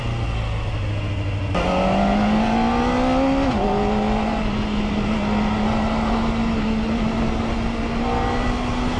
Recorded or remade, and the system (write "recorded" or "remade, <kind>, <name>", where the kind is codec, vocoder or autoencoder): recorded